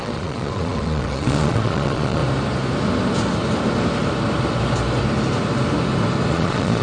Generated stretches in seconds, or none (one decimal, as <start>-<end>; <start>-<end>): 0.0-2.2; 6.3-6.8